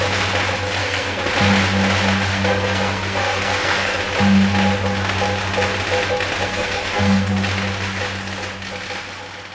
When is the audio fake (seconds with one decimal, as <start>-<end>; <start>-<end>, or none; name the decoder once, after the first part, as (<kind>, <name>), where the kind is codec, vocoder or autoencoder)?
0.8-1.3 (codec, SNAC); 2.3-4.0; 6.4-7.3